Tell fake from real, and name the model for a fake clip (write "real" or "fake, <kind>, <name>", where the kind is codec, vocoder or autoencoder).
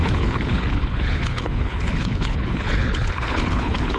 fake, codec, HILCodec